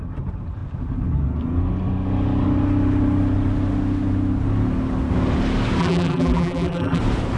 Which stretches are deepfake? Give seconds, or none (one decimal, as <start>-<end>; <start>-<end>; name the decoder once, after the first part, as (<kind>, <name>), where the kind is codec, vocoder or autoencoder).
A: 5.8-7.0 (vocoder, BigVGAN v2)